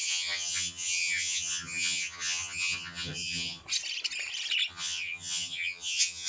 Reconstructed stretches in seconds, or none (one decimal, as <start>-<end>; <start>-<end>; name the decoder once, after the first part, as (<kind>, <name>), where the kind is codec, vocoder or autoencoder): 0.0-3.6 (vocoder, HiFi-GAN); 4.7-6.3